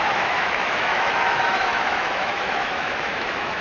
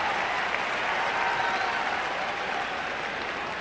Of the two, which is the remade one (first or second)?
first